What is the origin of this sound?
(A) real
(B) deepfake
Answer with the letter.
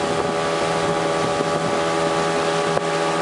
A